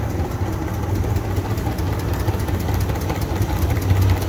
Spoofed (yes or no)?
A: no